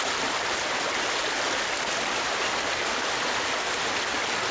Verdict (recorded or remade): recorded